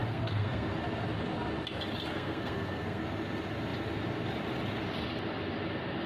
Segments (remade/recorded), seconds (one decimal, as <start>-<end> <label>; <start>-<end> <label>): 0.0-0.7 remade; 0.7-2.1 recorded; 2.1-3.0 remade; 3.0-6.1 recorded